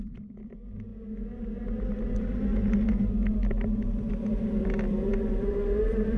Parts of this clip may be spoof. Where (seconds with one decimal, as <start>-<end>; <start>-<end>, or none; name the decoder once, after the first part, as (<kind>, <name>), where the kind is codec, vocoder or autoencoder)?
0.0-0.9 (vocoder, BigVGAN v2); 4.6-6.2